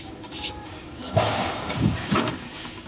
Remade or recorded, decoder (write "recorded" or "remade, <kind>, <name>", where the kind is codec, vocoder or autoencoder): remade, codec, DAC